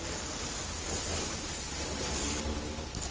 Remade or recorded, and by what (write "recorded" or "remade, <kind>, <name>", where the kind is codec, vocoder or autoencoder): recorded